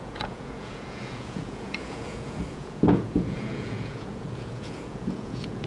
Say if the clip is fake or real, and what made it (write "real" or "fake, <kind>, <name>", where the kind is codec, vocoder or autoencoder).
fake, vocoder, Vocos